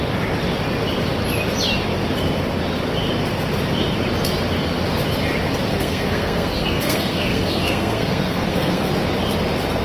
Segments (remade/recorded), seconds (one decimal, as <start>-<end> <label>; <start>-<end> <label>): 0.0-5.7 recorded; 5.7-8.9 remade; 8.9-9.8 recorded